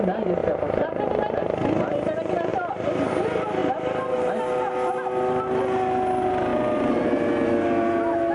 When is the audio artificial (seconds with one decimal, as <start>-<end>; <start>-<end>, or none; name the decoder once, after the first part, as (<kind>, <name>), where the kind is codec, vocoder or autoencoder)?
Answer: 2.5-3.1 (vocoder, BigVGAN v2)